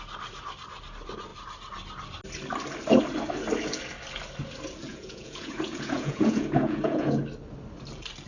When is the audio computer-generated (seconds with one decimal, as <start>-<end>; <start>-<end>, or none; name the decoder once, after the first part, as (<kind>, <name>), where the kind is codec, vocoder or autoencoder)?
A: 4.9-7.2 (vocoder, Vocos)